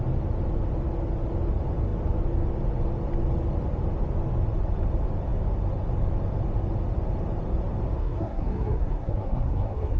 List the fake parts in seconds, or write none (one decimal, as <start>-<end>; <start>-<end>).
8.0-10.0